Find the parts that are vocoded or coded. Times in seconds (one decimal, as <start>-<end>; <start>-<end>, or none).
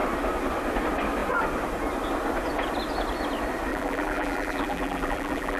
3.7-5.6